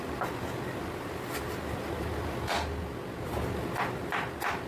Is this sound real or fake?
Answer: real